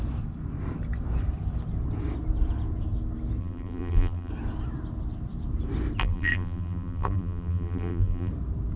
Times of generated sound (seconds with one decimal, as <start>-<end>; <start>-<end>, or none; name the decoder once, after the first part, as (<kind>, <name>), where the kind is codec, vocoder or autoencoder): 3.4-4.3 (vocoder, BigVGAN v2); 6.0-8.3

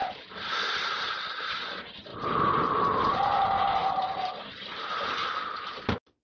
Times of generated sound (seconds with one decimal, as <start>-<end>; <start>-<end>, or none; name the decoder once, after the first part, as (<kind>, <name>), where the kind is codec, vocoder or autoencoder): 0.0-0.5 (vocoder, BigVGAN v2)